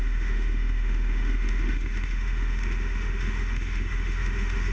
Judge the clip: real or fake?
fake